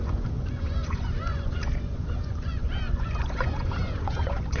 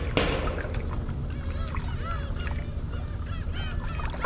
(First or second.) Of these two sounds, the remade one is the first